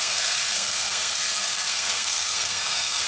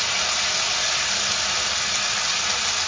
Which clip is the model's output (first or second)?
first